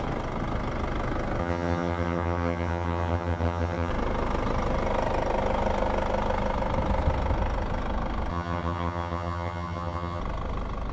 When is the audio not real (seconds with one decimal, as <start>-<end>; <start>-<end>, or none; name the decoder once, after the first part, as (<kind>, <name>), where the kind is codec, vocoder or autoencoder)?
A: 1.4-3.9 (vocoder, HiFi-GAN); 8.3-10.2